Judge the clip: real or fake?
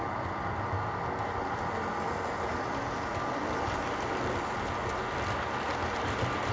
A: real